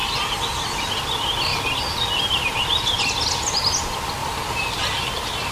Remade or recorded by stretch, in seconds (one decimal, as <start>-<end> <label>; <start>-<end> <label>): 0.0-5.5 recorded